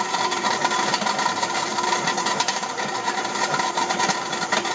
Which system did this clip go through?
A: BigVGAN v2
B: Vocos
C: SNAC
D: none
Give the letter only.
A